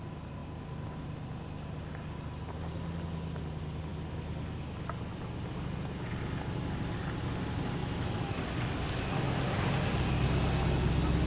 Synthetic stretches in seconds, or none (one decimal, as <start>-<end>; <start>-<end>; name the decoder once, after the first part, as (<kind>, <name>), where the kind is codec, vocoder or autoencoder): 7.8-8.4 (autoencoder, DAC-VAE)

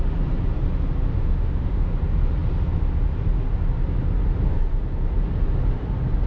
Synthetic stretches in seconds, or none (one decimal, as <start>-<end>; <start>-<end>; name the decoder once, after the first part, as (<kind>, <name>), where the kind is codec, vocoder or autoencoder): 1.1-1.9 (autoencoder, DAC-VAE)

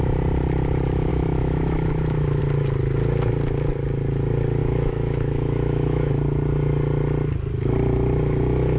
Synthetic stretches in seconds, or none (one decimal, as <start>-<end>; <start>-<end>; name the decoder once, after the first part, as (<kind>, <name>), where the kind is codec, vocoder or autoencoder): 1.1-2.4 (autoencoder, DAC-VAE); 4.6-6.1